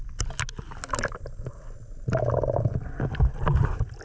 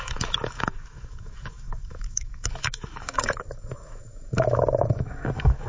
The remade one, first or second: second